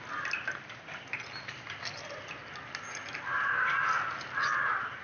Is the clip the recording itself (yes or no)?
yes